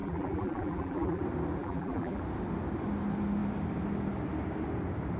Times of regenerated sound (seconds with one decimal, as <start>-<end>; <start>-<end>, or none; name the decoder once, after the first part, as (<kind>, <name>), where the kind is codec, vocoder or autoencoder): 0.0-1.2 (vocoder, BigVGAN v2); 1.6-2.2